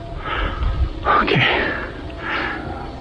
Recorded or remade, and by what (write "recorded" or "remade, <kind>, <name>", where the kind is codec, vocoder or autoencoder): recorded